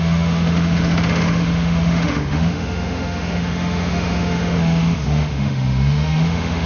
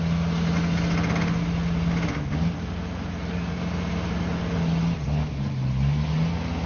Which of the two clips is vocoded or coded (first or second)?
first